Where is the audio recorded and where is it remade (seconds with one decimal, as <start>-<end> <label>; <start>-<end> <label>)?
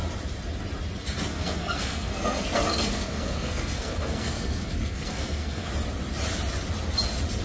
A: 0.0-1.3 recorded; 1.3-5.7 remade; 5.7-7.4 recorded